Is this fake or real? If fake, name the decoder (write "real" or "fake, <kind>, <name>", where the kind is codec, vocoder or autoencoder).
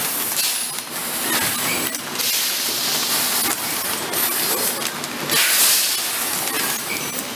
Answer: real